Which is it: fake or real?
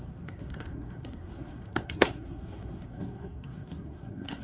fake